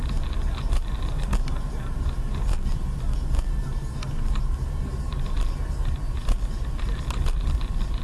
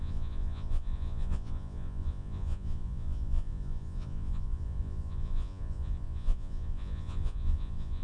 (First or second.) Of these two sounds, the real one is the first